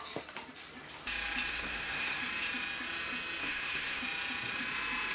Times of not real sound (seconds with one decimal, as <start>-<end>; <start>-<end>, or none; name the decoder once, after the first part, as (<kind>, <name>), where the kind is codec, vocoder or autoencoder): 1.5-2.2 (codec, SNAC); 3.4-4.0